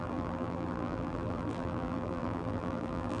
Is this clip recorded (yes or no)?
no